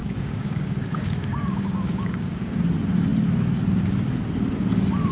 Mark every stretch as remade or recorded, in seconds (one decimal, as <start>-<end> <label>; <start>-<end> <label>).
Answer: 0.0-2.6 remade; 2.6-5.1 recorded